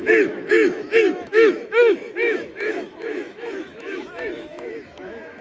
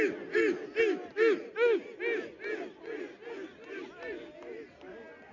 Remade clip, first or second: first